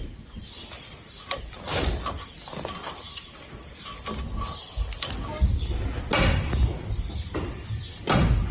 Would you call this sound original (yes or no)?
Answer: yes